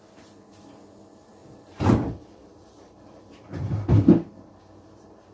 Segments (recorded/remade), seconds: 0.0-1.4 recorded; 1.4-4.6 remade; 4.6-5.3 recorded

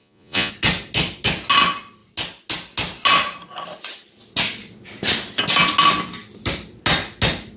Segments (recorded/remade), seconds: 0.0-0.5 remade; 0.5-7.6 recorded

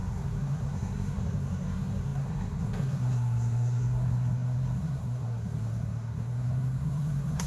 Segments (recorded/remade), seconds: 0.0-7.5 remade

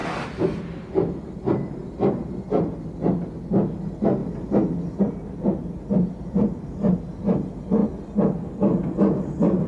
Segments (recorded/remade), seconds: 0.0-9.7 recorded

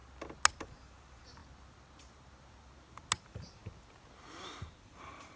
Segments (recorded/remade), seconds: 0.0-0.6 recorded; 0.6-1.4 remade; 1.4-3.2 recorded; 3.2-3.6 remade; 3.6-4.8 recorded; 4.8-5.4 remade

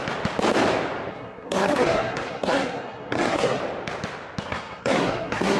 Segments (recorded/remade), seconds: 0.0-1.1 recorded; 1.1-3.6 remade; 3.6-4.4 recorded; 4.4-5.6 remade